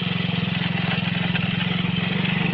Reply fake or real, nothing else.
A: real